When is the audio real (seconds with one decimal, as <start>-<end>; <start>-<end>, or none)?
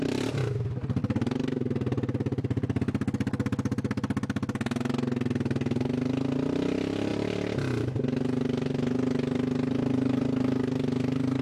0.0-1.0; 2.8-11.4